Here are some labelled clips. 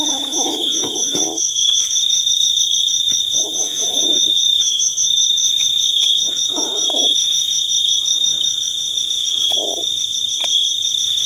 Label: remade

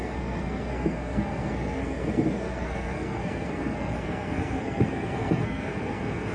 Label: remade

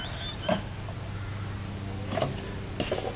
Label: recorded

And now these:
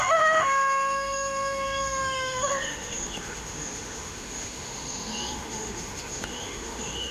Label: remade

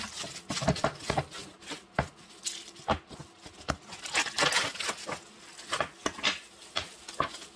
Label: recorded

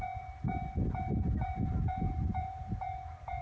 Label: remade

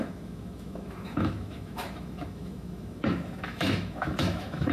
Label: remade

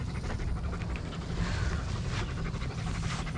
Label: recorded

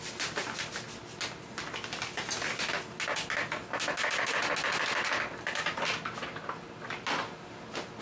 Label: recorded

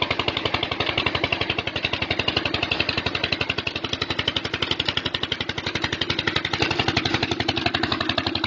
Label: recorded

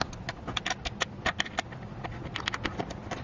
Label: recorded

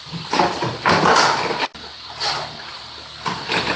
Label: recorded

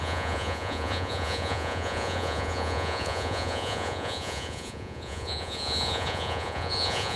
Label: remade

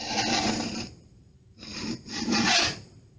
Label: remade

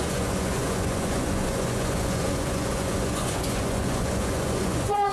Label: remade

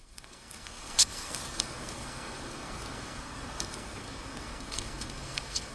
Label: remade